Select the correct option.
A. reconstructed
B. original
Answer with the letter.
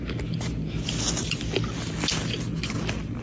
B